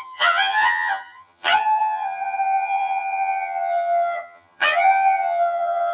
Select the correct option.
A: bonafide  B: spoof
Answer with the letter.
B